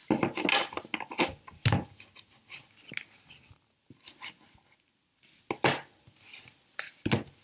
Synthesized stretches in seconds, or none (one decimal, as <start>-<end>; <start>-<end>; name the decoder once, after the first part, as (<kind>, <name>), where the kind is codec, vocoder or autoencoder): none